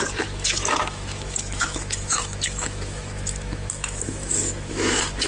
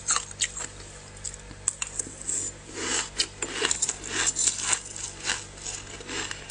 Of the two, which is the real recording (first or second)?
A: second